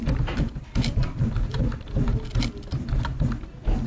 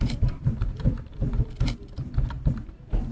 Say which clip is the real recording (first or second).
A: first